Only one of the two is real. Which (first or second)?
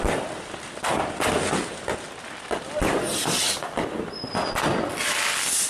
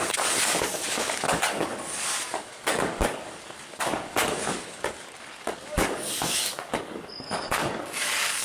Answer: first